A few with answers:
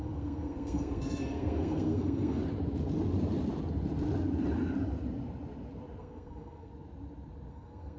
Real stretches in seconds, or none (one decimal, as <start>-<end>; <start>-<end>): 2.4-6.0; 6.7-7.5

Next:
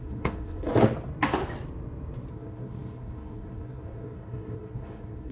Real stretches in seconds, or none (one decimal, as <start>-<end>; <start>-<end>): 0.7-2.3

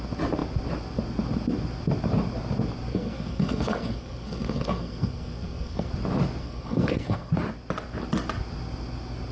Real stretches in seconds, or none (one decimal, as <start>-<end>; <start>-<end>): 0.0-2.9; 5.9-6.4; 7.3-9.3